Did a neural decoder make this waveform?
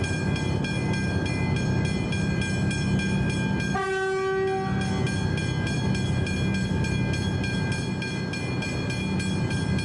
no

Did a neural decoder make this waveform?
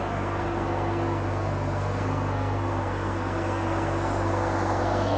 yes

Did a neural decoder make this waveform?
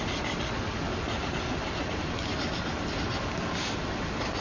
no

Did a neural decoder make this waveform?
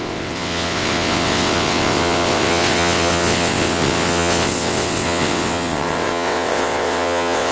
yes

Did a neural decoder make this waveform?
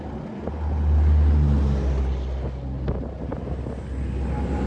no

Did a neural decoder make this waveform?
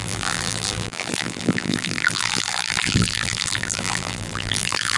yes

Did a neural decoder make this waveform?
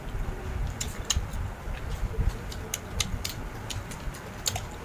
no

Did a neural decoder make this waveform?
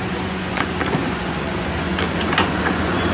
yes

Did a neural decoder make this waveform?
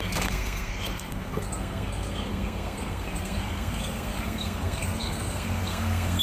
yes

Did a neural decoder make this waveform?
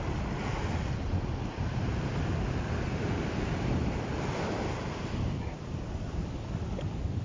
no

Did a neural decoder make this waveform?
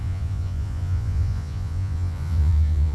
yes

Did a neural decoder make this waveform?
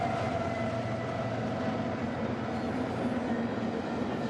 no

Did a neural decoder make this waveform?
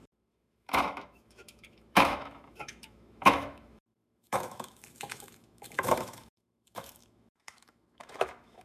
yes